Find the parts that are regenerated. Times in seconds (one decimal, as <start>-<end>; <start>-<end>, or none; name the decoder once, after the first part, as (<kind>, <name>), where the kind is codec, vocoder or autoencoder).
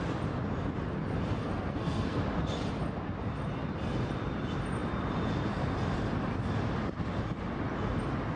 1.4-2.2 (codec, SNAC)